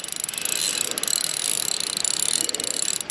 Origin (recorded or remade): recorded